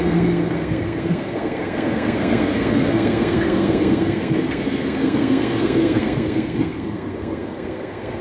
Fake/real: fake